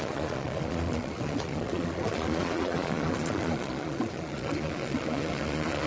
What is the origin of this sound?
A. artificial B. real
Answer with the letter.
A